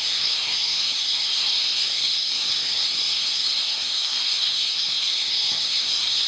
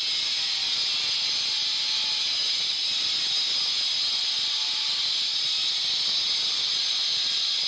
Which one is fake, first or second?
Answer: first